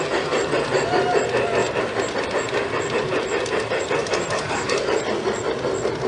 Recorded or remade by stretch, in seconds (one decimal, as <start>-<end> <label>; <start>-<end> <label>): 0.0-1.6 recorded; 1.6-2.2 remade; 2.2-4.0 recorded; 4.0-5.0 remade; 5.0-6.1 recorded